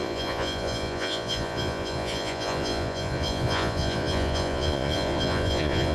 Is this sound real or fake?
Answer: fake